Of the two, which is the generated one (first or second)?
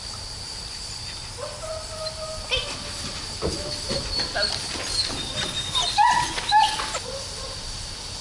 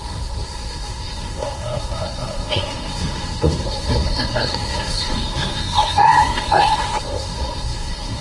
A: second